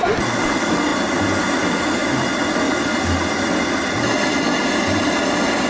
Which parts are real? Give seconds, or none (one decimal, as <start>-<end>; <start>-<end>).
0.0-5.7